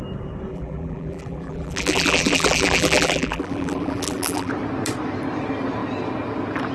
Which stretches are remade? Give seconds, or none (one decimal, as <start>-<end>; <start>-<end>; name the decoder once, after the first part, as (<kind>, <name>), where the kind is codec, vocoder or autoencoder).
0.5-4.5 (vocoder, BigVGAN v2)